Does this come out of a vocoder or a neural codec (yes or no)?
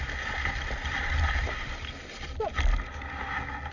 no